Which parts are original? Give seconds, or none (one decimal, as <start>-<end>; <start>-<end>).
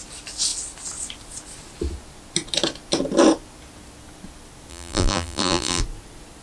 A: 0.0-4.7; 5.8-6.4